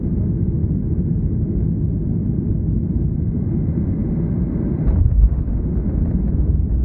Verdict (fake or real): real